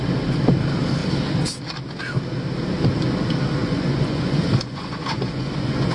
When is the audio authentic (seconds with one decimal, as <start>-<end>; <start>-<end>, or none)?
0.0-3.6

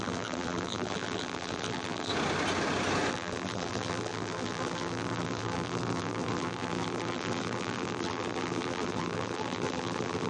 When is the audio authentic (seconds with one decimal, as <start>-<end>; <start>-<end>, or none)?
2.1-3.1

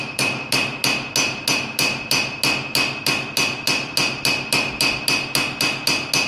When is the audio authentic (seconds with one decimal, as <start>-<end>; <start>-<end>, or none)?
0.0-6.3

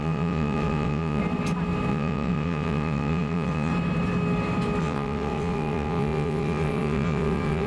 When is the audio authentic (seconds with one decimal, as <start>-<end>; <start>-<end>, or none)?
1.2-1.9; 3.7-4.8

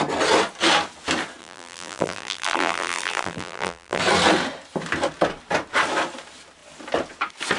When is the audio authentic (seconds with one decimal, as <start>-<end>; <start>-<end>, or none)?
0.0-1.4; 4.0-7.6

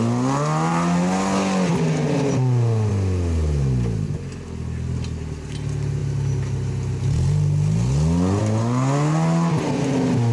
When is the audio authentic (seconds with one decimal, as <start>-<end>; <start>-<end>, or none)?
0.0-10.3

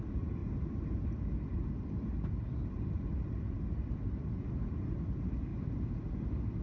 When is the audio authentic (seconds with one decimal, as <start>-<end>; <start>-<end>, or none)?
0.0-0.4; 4.4-5.5; 6.0-6.6

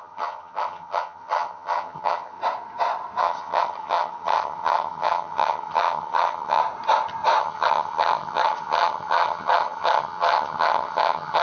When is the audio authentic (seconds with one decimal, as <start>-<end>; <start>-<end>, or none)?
2.4-3.2; 6.6-7.4